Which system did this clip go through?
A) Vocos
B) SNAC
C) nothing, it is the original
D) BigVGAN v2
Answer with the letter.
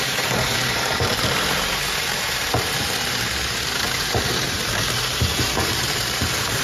D